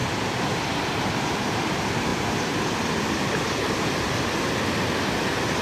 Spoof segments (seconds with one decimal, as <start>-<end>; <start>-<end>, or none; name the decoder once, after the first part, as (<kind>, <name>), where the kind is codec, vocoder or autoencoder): none